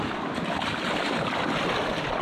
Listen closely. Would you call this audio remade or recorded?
recorded